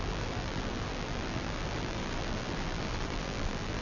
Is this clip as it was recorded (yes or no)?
no